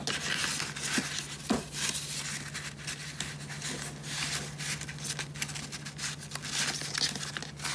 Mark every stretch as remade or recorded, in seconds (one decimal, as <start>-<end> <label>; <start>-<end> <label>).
0.0-7.7 recorded